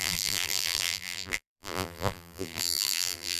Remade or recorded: remade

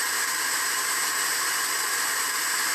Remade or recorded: recorded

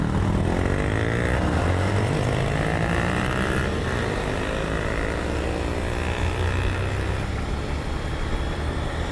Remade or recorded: recorded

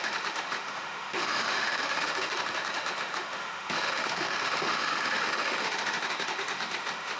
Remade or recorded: remade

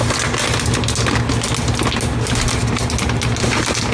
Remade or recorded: recorded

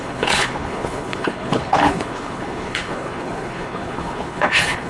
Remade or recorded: remade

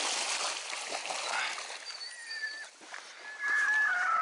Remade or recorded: recorded